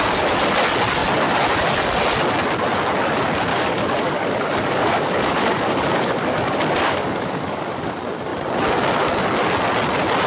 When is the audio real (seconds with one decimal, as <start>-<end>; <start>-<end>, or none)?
0.0-3.5; 7.9-10.3